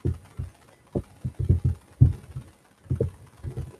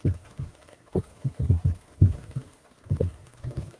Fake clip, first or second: second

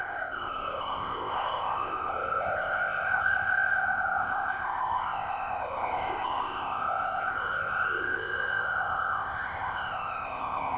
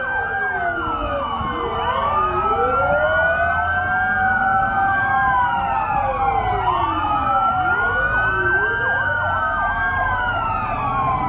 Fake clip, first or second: first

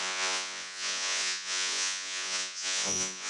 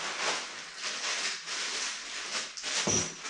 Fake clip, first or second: first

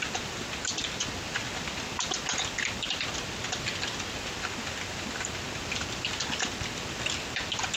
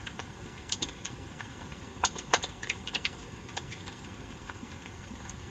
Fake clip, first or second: second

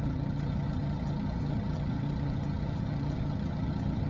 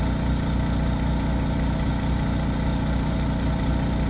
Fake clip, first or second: first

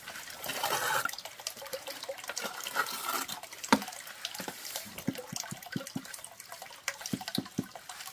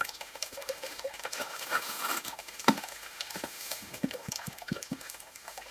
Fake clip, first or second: second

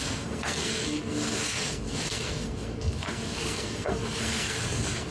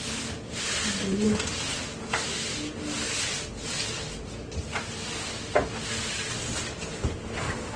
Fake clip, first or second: first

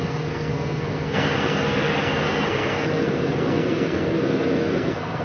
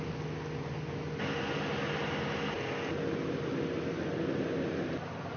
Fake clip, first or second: first